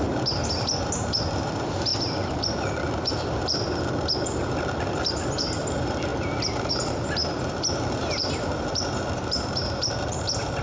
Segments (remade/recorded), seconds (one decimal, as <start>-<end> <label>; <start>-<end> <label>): 0.0-1.9 remade; 1.9-3.1 recorded; 3.1-6.1 remade; 6.1-6.7 recorded; 6.7-10.6 remade